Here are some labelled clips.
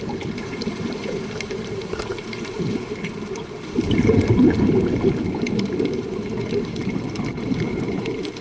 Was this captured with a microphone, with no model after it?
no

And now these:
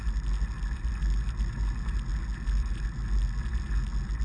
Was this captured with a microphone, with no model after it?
yes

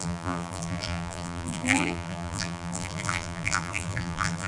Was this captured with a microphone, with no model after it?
no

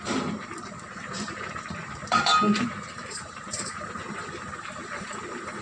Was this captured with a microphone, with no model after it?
no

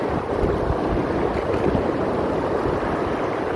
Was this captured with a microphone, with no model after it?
no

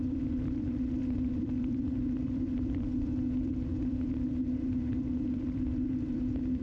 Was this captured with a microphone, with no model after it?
no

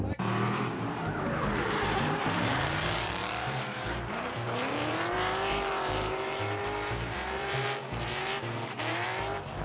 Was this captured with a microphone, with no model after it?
no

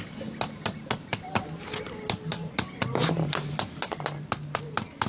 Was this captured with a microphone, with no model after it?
yes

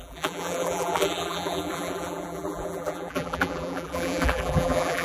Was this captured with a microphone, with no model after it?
no